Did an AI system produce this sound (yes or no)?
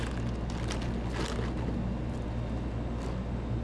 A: no